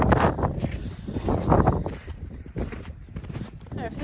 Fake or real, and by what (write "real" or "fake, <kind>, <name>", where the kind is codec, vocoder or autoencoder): fake, vocoder, BigVGAN v2